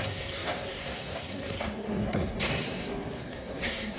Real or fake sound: fake